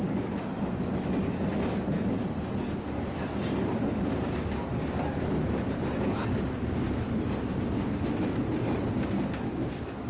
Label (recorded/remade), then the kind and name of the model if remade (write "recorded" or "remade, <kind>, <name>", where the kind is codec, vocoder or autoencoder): recorded